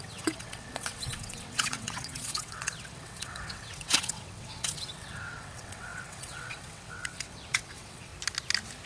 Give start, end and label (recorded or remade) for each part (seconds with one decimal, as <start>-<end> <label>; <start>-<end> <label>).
0.0-8.1 remade; 8.1-8.9 recorded